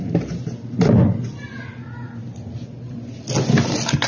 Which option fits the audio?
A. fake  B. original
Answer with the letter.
B